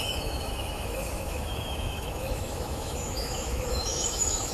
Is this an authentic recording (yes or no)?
no